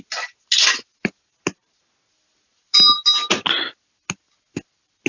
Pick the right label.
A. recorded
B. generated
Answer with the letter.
A